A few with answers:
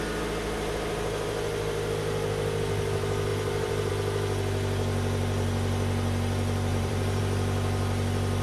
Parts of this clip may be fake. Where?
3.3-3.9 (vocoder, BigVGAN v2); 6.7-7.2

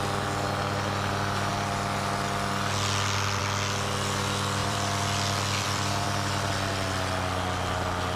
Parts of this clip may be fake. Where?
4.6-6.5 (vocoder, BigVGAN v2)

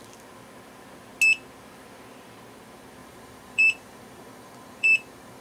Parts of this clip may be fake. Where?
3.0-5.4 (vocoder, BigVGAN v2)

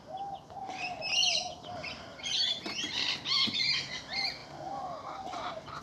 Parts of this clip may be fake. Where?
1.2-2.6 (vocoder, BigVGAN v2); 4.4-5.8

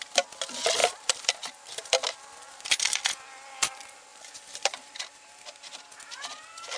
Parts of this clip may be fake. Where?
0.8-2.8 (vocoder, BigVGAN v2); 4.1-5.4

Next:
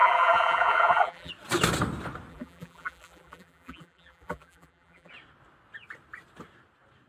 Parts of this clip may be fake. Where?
0.0-1.3 (vocoder, BigVGAN v2); 2.3-5.1

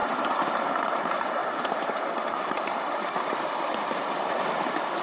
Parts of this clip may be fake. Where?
0.0-0.8 (vocoder, BigVGAN v2); 1.4-4.4